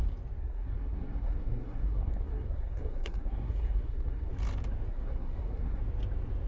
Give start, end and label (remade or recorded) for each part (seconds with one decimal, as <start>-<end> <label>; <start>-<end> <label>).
0.0-0.4 recorded; 0.4-4.3 remade; 4.3-4.9 recorded; 4.9-5.8 remade; 5.8-6.5 recorded